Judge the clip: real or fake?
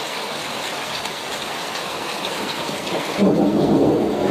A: fake